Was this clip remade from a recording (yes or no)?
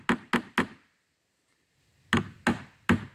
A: no